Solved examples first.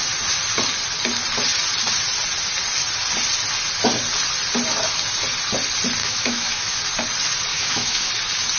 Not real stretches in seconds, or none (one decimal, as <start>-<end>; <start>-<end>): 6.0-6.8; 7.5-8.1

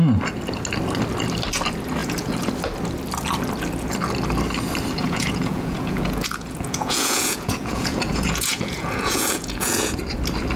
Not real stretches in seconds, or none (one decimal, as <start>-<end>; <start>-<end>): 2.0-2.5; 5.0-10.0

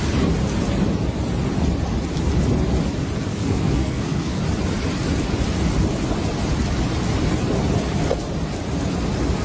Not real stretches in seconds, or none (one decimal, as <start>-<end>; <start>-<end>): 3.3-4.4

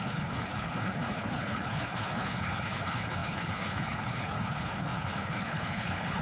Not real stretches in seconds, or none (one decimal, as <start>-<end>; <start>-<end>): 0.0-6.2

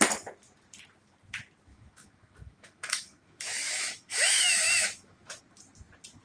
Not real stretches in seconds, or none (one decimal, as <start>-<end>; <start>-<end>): 1.7-5.4